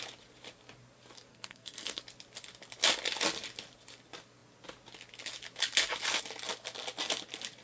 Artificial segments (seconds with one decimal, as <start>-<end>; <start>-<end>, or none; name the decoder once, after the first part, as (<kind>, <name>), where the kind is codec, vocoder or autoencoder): 1.3-2.0 (codec, SNAC)